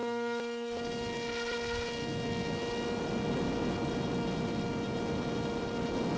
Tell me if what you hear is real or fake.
real